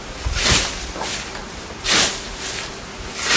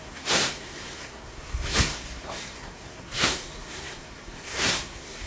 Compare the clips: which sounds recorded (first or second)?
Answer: first